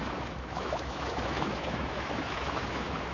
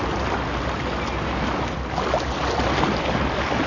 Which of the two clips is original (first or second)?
second